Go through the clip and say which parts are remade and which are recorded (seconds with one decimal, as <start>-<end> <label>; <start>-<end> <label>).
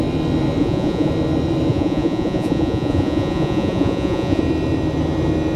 0.0-0.6 recorded; 0.6-1.1 remade; 1.1-1.7 recorded; 1.7-4.4 remade; 4.4-5.6 recorded